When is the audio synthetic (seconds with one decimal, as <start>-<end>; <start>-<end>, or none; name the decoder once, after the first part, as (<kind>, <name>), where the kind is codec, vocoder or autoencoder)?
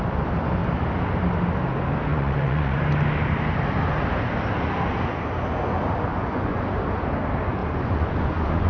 2.1-2.8 (vocoder, Vocos); 6.1-6.6; 7.6-8.7